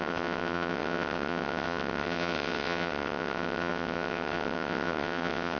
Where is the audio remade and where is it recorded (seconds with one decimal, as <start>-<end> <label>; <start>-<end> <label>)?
0.0-5.6 remade